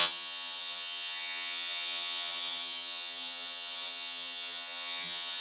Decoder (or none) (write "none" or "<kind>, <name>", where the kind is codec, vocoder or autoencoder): vocoder, HiFi-GAN